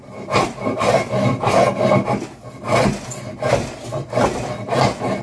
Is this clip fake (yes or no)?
no